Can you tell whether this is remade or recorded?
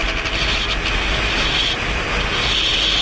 recorded